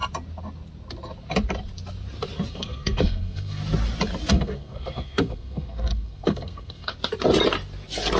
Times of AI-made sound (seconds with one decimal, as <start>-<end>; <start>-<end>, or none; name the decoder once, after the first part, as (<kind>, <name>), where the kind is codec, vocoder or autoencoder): 2.5-3.6 (codec, SNAC); 4.3-6.9